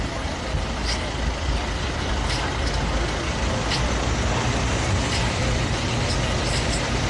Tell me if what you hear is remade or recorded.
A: recorded